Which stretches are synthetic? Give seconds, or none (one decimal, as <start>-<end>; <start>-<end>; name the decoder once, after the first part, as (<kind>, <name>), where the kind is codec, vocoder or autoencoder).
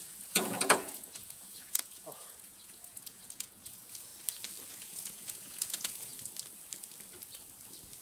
0.0-4.1 (vocoder, Vocos); 4.7-6.1